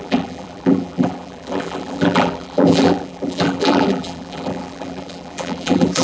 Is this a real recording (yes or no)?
no